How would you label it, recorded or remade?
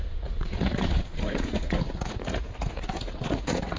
remade